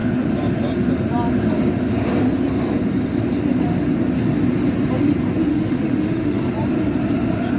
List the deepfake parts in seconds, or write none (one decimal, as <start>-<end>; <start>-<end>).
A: 5.5-6.5